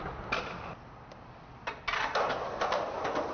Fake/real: real